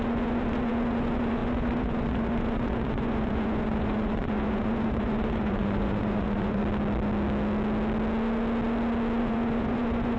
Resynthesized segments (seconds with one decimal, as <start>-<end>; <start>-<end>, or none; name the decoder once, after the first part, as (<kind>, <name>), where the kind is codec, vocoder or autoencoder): 0.0-6.6 (vocoder, Vocos); 9.2-10.2